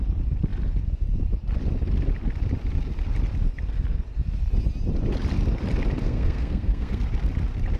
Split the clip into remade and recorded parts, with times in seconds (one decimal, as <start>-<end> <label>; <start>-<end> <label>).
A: 0.0-6.0 recorded; 6.0-7.0 remade; 7.0-7.8 recorded